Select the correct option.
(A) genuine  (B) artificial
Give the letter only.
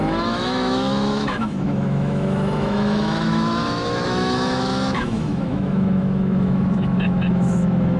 B